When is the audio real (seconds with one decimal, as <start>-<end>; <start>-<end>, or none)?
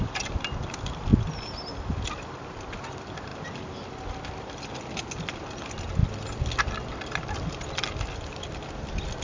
0.0-9.2